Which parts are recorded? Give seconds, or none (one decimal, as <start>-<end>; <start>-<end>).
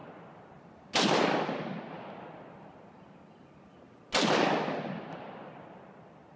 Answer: 0.0-6.4